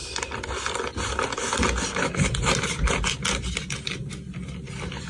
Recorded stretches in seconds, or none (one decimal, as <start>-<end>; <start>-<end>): 0.0-5.1